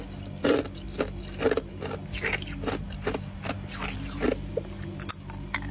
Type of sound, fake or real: real